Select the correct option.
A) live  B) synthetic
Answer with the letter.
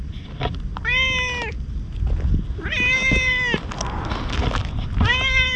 A